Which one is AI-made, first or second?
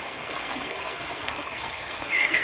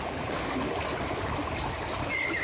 first